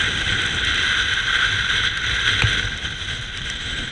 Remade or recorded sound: recorded